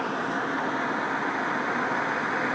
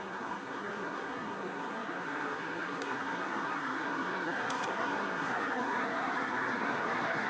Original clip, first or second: first